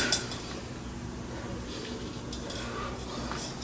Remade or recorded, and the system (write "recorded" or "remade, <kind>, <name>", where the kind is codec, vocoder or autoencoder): recorded